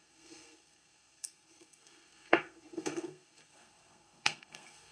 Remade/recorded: remade